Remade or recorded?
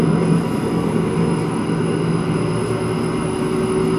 recorded